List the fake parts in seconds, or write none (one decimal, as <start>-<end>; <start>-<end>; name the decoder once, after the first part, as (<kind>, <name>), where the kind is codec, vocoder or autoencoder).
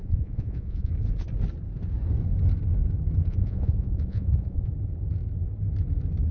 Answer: 0.0-0.9 (vocoder, Vocos); 3.3-4.7